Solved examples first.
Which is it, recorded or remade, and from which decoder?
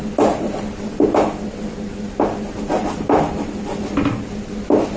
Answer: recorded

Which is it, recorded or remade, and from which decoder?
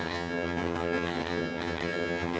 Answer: remade, vocoder, HiFi-GAN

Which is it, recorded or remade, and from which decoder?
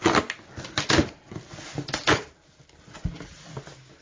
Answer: recorded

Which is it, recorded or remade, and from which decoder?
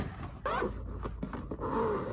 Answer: recorded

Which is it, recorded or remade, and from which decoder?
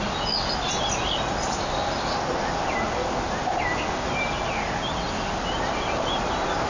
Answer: recorded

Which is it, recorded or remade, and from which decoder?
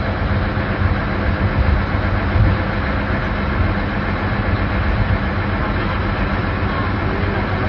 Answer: recorded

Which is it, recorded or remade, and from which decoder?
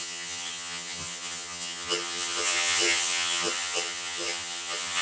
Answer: remade, vocoder, HiFi-GAN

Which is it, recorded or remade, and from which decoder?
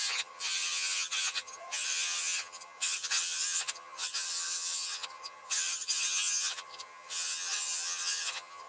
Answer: remade, vocoder, HiFi-GAN